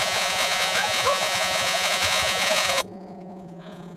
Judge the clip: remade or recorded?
remade